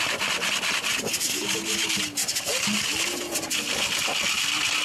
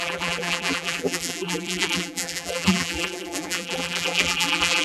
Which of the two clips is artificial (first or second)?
second